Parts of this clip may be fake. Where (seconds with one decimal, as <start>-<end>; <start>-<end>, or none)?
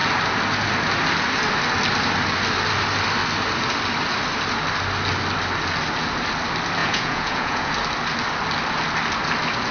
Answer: 6.8-7.7